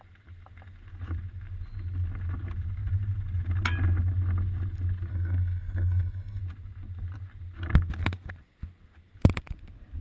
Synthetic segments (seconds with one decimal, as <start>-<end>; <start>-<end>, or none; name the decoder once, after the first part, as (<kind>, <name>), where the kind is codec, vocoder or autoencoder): 5.1-6.4 (codec, SNAC)